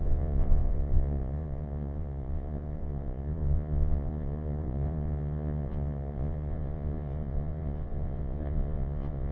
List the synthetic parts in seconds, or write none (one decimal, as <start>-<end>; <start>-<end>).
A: 0.0-9.3